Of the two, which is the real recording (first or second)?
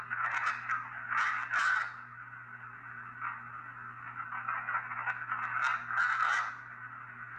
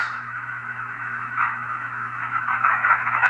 first